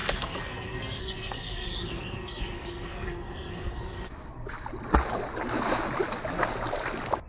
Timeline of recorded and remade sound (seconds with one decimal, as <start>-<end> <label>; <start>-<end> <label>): 0.0-3.8 remade; 3.8-7.3 recorded